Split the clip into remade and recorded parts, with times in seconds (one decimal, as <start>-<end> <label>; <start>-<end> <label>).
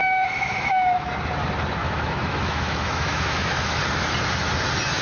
0.0-1.1 remade; 1.1-1.8 recorded; 1.8-3.8 remade; 3.8-5.0 recorded